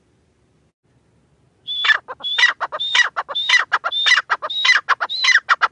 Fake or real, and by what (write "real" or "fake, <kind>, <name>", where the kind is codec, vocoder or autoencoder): real